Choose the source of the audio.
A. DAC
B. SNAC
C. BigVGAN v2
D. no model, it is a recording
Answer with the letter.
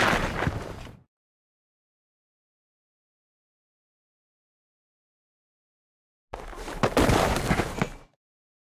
D